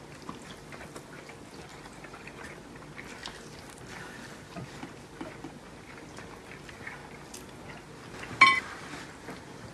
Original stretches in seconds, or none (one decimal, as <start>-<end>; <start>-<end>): 0.0-9.7